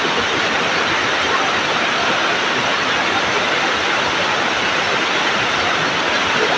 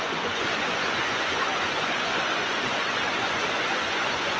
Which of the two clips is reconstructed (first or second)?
second